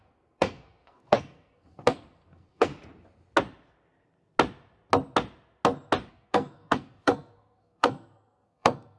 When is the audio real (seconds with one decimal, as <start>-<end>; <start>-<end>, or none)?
2.7-6.1